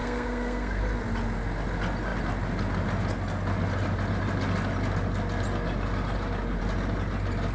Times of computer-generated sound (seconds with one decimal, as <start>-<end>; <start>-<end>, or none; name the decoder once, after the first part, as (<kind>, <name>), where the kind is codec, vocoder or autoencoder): 0.0-0.8 (codec, SNAC)